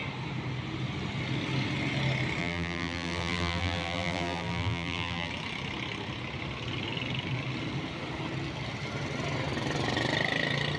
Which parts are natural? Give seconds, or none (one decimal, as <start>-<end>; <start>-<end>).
0.0-2.4; 5.3-10.8